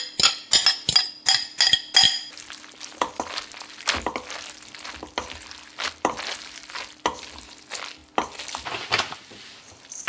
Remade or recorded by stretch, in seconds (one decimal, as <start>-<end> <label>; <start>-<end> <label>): 0.0-10.1 recorded